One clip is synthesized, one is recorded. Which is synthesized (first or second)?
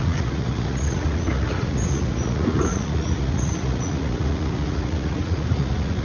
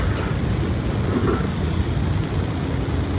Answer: first